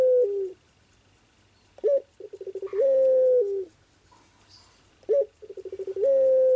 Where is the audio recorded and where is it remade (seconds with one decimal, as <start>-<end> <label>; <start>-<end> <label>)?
0.0-6.6 recorded